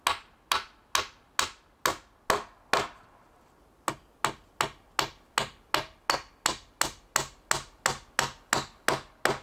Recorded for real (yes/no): yes